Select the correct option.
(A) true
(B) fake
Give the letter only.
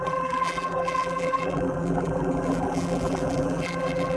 B